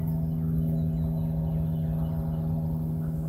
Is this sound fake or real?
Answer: real